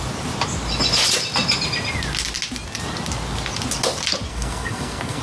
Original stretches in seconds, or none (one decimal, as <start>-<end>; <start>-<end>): 0.0-4.3